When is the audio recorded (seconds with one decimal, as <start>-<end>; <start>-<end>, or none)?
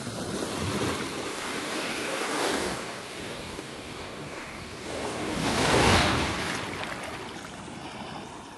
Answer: 0.0-1.3; 6.5-8.6